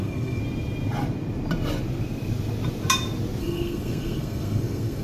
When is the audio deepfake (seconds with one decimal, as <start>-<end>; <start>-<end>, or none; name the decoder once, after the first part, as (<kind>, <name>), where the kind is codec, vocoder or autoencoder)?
0.0-0.4 (codec, SNAC); 3.4-5.0